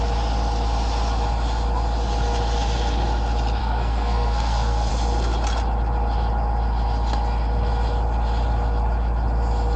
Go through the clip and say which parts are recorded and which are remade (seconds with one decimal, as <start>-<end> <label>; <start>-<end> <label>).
0.0-3.6 recorded; 3.6-4.9 remade; 4.9-9.8 recorded